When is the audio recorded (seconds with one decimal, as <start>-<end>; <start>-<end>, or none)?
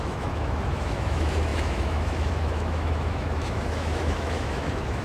none